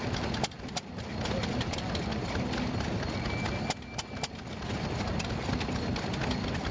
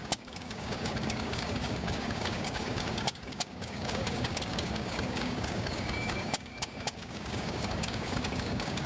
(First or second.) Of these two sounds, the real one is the first